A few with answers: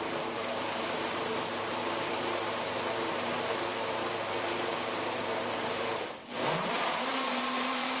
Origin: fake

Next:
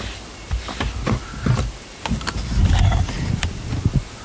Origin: real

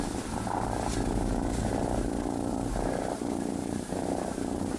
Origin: fake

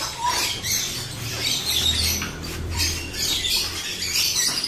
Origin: fake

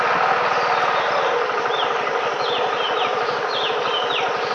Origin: real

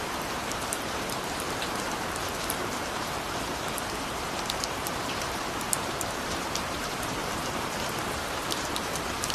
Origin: fake